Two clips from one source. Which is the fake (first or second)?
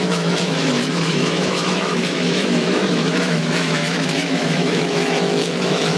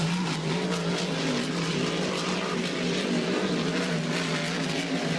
first